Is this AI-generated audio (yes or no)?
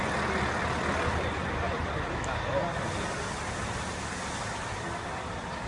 no